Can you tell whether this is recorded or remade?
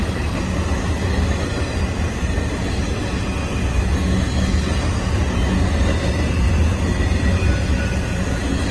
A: recorded